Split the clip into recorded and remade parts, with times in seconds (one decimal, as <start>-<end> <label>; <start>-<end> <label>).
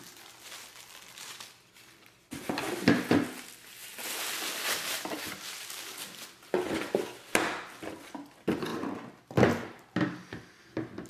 0.0-11.1 recorded